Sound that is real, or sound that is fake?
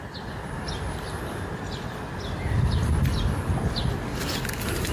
real